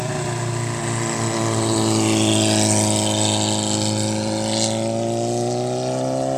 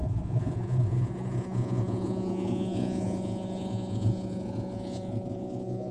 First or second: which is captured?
first